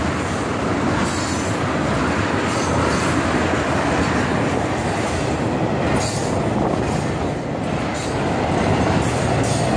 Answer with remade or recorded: recorded